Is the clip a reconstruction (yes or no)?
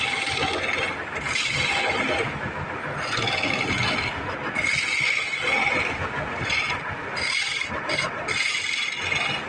no